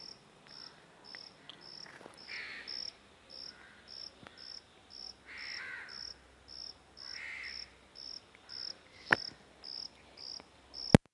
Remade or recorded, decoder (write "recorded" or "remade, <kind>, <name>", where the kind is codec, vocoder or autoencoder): recorded